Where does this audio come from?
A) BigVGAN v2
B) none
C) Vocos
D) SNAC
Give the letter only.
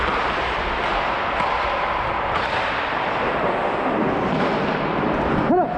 B